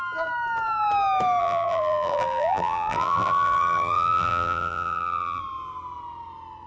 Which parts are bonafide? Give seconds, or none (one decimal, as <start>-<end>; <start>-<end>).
0.0-1.4; 5.4-6.7